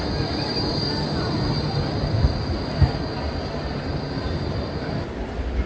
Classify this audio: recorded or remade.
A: recorded